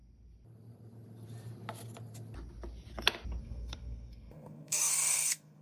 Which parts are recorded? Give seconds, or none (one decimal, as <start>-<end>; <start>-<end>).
0.0-3.4